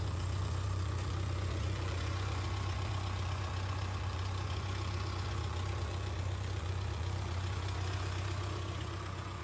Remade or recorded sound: remade